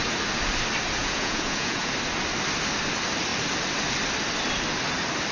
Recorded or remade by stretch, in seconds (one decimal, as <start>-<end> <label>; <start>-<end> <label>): 0.0-1.0 recorded; 1.0-1.9 remade; 1.9-5.3 recorded